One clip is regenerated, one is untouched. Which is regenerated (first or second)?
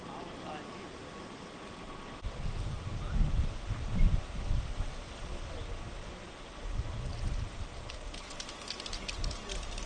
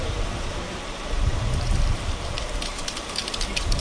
second